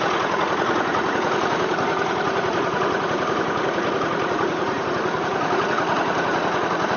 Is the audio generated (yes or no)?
yes